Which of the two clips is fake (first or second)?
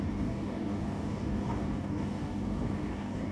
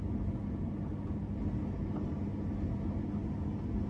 first